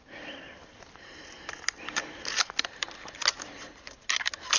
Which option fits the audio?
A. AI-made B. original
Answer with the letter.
B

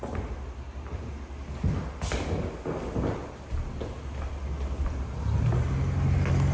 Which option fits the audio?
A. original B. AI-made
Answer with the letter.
A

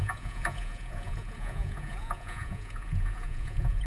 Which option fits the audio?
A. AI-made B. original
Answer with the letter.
A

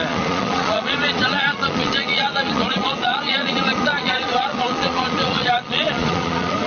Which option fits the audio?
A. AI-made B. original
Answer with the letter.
A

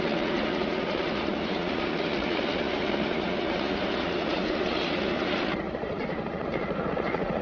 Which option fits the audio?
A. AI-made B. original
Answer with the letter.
A